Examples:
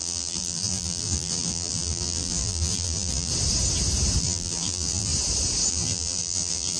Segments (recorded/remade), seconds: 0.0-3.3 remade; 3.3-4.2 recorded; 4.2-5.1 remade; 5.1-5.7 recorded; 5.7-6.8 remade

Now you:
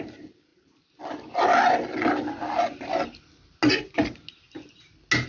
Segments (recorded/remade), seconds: 0.0-5.3 recorded

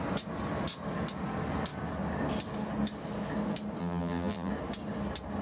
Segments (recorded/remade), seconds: 0.0-3.8 recorded; 3.8-4.5 remade; 4.5-5.4 recorded